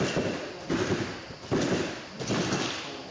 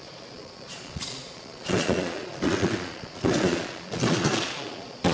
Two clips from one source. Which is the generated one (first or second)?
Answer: second